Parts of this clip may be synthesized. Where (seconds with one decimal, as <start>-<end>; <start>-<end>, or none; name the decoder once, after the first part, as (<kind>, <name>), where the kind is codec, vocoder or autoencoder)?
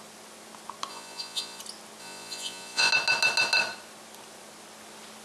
0.9-1.6 (vocoder, Vocos); 2.0-2.9